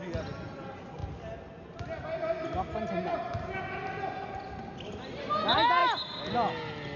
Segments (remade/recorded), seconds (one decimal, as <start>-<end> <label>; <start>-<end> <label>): 0.0-7.0 recorded